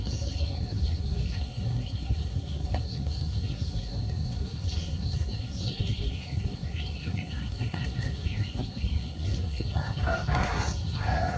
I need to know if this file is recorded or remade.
remade